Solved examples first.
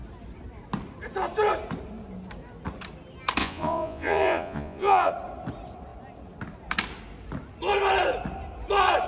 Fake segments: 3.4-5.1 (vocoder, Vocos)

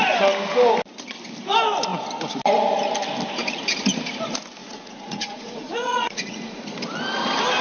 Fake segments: 4.6-6.6 (vocoder, Vocos)

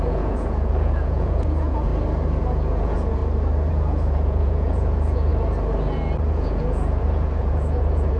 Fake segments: 0.0-1.9 (vocoder, Vocos); 2.4-3.2; 3.7-5.3; 6.3-8.2

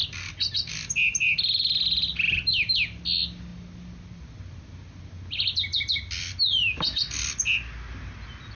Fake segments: none

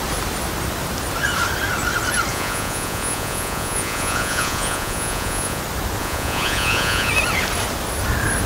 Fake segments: 2.3-5.6 (vocoder, Vocos); 6.0-7.1

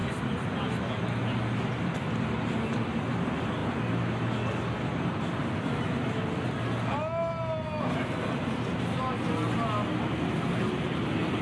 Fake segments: none

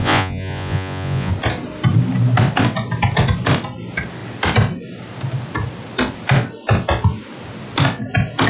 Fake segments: 0.0-1.3 (vocoder, Vocos)

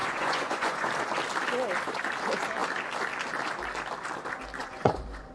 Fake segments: 0.0-0.9 (vocoder, Vocos); 4.6-5.3